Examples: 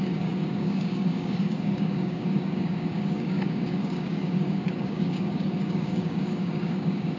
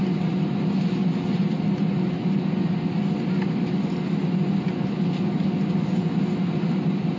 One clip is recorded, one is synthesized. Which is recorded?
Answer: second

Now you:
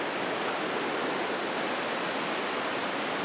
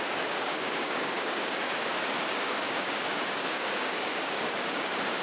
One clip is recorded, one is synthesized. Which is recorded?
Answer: first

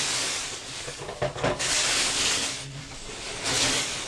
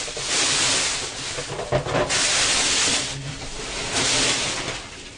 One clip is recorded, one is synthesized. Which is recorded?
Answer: second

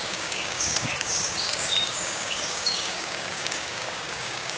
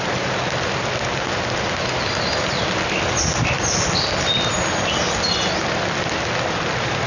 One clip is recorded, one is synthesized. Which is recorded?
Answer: second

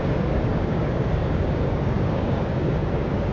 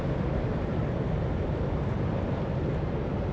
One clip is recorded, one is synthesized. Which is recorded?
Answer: second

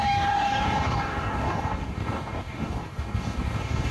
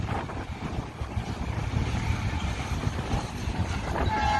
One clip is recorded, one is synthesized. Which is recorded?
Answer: second